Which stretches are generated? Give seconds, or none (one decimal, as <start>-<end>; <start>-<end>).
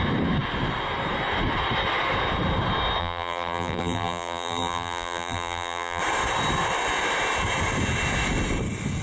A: 3.0-6.0